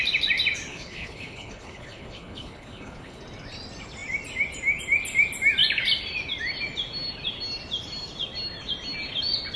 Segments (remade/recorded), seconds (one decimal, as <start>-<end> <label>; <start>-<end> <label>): 0.0-0.7 recorded; 0.7-3.2 remade; 3.2-9.6 recorded